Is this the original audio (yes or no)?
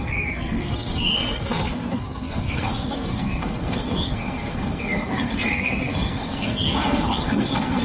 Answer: no